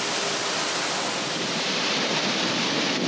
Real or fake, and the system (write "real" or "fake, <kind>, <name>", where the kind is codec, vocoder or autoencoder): real